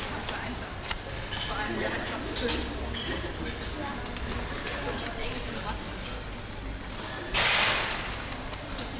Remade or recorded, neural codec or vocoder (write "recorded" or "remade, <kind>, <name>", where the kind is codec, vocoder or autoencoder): recorded